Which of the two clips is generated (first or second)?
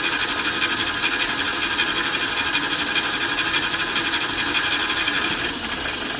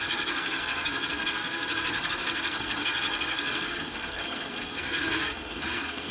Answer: second